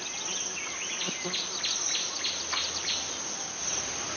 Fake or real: real